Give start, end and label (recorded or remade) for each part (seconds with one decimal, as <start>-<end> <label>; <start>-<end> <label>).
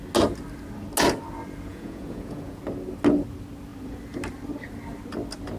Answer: 0.0-1.7 recorded; 1.7-2.6 remade; 2.6-5.6 recorded